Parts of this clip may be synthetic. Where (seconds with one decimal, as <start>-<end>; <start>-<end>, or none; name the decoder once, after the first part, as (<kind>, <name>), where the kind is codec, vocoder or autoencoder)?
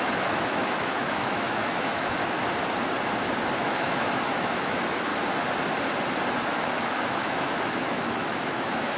0.0-2.2 (autoencoder, DAC-VAE); 3.6-5.1; 6.6-9.0